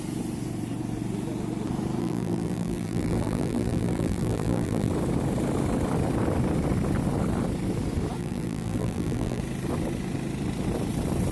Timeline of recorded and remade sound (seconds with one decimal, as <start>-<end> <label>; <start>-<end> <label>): 0.0-2.0 recorded; 2.0-4.9 remade; 4.9-8.2 recorded; 8.2-9.4 remade; 9.4-11.3 recorded